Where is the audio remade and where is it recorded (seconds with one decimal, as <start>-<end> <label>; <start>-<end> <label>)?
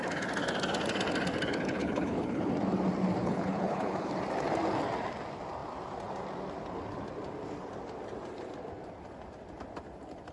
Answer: 0.0-1.8 recorded; 1.8-2.5 remade; 2.5-3.2 recorded; 3.2-4.1 remade; 4.1-10.3 recorded